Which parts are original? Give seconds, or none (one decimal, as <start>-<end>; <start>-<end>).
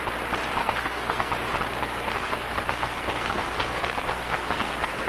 0.0-0.6; 1.3-1.8